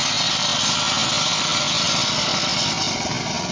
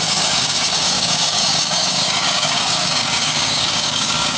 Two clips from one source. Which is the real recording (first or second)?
first